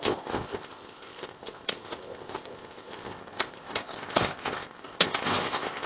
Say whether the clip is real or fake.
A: fake